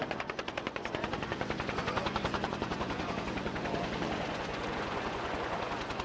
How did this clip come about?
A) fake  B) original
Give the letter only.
A